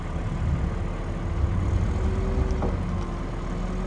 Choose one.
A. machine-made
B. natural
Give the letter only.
B